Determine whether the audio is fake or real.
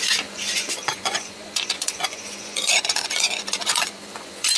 fake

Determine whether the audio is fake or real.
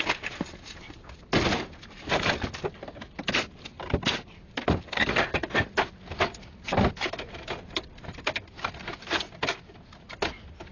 real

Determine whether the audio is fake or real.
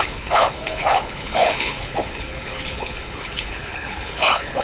fake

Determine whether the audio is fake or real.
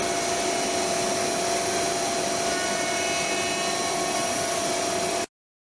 real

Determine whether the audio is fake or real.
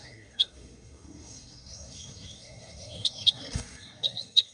fake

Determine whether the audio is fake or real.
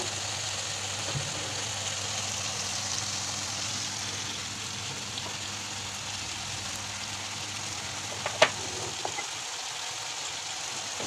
real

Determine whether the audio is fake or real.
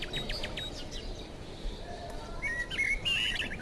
real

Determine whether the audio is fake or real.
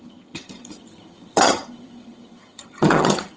fake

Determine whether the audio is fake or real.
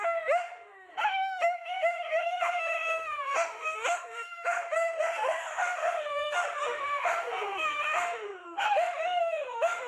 fake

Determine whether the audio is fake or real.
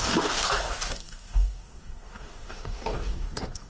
fake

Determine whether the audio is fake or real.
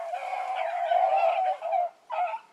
real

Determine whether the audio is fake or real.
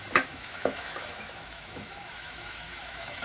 fake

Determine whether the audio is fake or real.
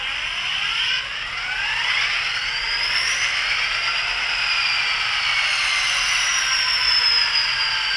real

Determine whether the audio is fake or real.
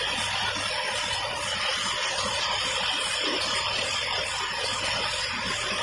real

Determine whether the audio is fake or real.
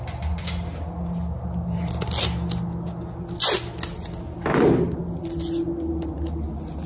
real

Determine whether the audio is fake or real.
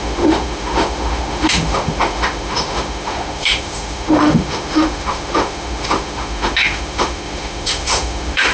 fake